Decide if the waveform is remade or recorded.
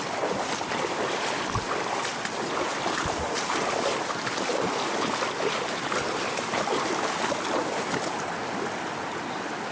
recorded